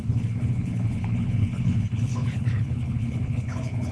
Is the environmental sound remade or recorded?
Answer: remade